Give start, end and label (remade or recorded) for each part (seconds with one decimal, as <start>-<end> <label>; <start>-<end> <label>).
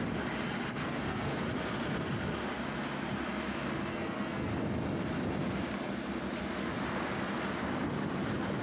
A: 0.0-0.8 recorded; 0.8-1.4 remade; 1.4-3.9 recorded; 3.9-4.5 remade; 4.5-8.6 recorded